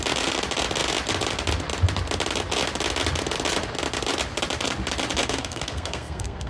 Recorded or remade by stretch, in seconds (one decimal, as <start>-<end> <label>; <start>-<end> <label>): 0.0-5.2 recorded; 5.2-6.5 remade